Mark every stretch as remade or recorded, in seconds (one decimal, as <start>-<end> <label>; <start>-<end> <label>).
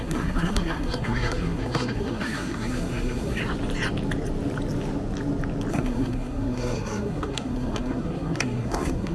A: 0.0-3.4 remade; 3.4-5.7 recorded; 5.7-9.1 remade